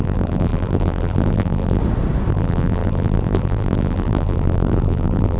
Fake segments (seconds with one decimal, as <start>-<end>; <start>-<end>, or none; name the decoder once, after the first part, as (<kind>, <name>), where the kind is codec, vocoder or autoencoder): 0.0-1.8 (vocoder, BigVGAN v2); 2.3-5.4